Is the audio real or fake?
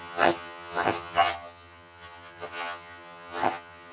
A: fake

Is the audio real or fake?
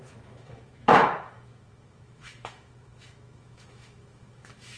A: fake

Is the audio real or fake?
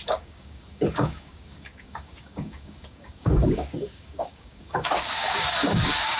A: fake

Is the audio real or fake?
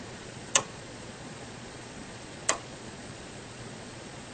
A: fake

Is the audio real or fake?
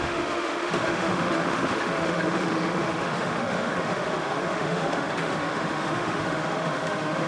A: fake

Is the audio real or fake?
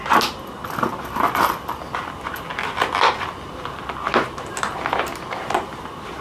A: real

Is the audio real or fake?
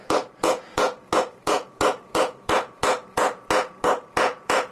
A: fake